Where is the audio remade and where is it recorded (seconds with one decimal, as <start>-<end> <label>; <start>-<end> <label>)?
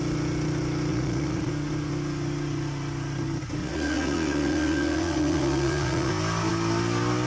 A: 0.0-0.9 recorded; 0.9-1.5 remade; 1.5-3.6 recorded; 3.6-6.1 remade; 6.1-7.3 recorded